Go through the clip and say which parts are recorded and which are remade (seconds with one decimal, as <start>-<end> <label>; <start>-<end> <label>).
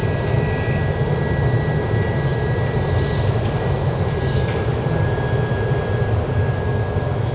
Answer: 0.0-2.3 recorded; 2.3-5.1 remade; 5.1-7.3 recorded